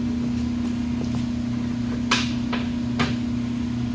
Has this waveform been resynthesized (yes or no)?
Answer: no